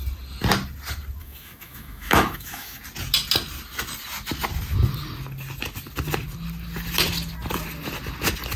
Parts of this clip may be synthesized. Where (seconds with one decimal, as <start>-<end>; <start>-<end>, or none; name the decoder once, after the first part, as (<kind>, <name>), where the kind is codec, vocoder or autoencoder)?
1.2-2.8 (autoencoder, DAC-VAE)

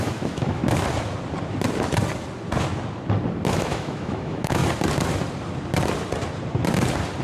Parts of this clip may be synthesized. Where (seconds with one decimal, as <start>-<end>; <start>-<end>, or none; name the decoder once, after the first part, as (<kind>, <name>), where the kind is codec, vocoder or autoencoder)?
0.0-0.6 (autoencoder, DAC-VAE); 3.5-4.6

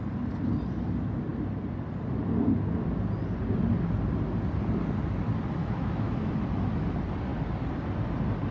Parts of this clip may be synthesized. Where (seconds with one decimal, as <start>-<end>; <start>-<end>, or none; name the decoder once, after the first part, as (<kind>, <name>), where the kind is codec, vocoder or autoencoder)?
5.6-6.3 (autoencoder, DAC-VAE)

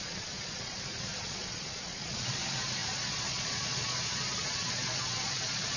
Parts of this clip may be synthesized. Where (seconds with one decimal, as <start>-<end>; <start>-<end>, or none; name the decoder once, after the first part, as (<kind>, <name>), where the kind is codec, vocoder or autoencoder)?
0.0-5.8 (vocoder, Vocos)

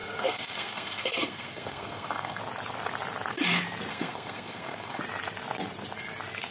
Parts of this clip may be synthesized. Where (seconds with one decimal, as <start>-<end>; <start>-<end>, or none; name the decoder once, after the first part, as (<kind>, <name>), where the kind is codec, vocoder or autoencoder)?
0.0-2.4 (codec, SNAC); 3.9-5.0